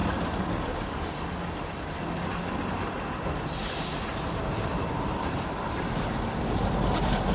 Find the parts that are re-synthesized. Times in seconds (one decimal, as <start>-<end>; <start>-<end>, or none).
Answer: 4.3-7.3